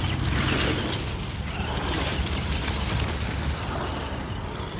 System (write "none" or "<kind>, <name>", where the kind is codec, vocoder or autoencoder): none